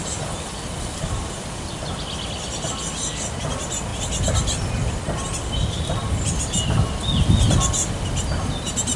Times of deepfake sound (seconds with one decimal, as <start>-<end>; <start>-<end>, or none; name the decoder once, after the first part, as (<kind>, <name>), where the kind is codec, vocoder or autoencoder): none